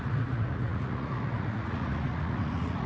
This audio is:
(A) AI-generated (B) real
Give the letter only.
A